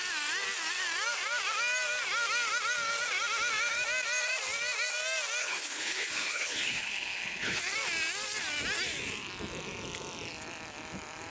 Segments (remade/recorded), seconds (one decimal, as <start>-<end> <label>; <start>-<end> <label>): 0.0-5.4 recorded; 5.4-7.6 remade; 7.6-11.3 recorded